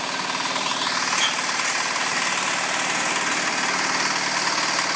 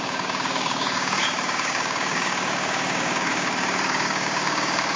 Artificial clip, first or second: second